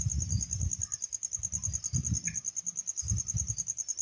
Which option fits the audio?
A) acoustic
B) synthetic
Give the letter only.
A